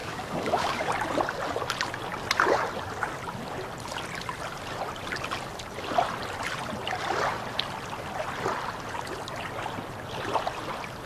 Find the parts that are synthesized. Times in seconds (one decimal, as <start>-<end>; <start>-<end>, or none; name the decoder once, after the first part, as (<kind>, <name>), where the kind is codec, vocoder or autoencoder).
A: 0.0-0.9 (codec, DAC)